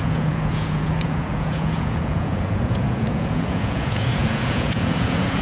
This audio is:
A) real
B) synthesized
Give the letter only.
B